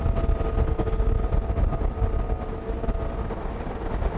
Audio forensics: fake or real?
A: real